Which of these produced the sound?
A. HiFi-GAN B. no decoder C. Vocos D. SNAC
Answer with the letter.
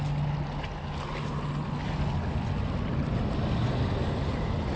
B